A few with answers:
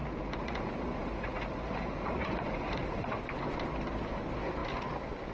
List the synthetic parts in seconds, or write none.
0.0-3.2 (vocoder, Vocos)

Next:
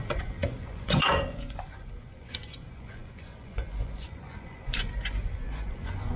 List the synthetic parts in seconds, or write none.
0.0-6.2 (vocoder, Vocos)

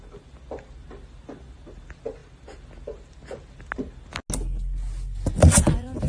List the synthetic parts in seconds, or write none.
none

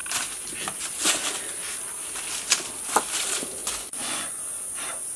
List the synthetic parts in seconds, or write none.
3.6-4.4 (vocoder, Vocos)

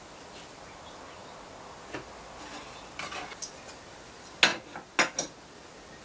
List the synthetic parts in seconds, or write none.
none

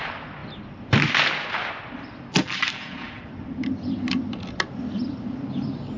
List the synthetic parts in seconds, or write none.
none

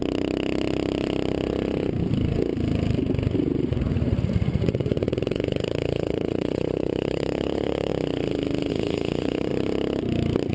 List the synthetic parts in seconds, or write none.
3.4-7.9 (vocoder, Vocos); 8.7-9.5

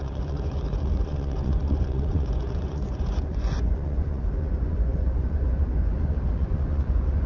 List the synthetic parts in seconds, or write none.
0.0-7.3 (vocoder, Vocos)